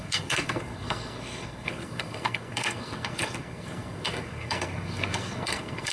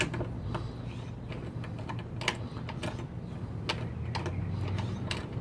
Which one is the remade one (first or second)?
first